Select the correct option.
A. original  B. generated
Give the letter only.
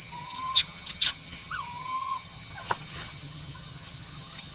B